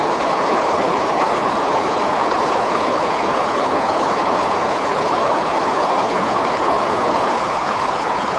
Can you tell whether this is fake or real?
fake